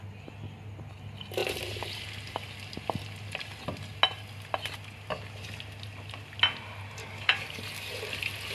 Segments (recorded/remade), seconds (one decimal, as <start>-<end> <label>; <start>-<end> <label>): 0.0-7.0 recorded; 7.0-7.6 remade; 7.6-8.5 recorded